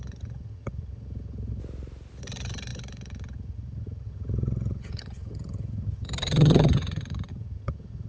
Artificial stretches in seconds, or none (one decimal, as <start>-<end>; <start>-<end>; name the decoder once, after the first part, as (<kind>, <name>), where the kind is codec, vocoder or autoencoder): 0.0-1.6 (vocoder, HiFi-GAN); 2.2-8.1